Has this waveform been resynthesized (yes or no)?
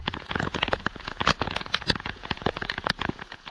yes